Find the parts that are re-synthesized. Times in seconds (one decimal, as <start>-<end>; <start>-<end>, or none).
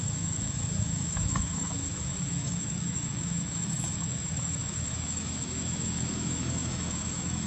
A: 0.0-7.5